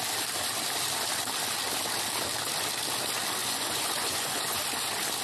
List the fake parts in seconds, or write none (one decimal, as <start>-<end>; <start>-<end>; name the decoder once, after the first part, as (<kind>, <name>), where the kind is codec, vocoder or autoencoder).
3.4-4.6 (vocoder, Vocos)